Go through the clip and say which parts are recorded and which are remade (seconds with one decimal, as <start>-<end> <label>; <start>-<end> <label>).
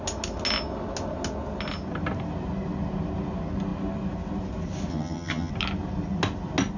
0.0-4.9 recorded; 4.9-5.5 remade; 5.5-6.8 recorded